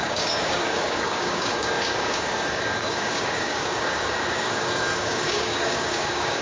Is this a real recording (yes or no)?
no